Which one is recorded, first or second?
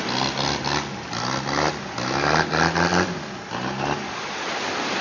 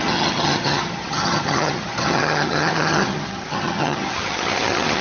first